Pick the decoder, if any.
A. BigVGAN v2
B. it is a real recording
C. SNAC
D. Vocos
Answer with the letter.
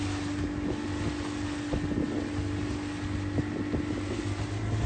B